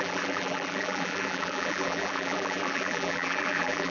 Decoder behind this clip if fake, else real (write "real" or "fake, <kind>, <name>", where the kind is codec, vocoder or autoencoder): fake, vocoder, BigVGAN v2